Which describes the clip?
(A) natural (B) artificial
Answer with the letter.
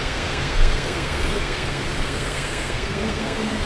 B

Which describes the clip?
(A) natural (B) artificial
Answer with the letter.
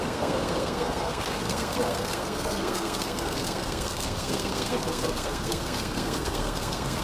B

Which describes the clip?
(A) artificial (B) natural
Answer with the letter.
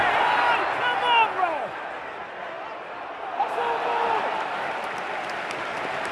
B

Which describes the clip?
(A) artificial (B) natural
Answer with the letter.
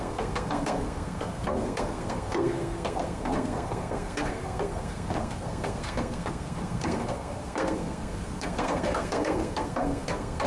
A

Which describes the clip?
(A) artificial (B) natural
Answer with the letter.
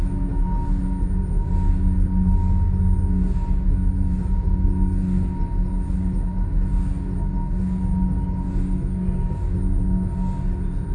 B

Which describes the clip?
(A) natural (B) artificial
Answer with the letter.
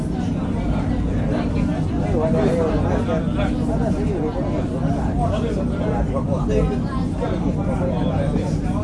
A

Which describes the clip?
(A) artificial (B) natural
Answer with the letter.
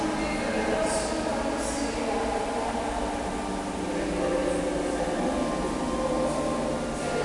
B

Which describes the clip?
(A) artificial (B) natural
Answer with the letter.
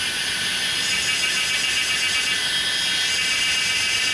B